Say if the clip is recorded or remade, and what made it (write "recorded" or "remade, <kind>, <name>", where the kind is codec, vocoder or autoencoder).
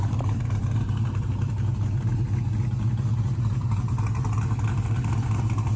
recorded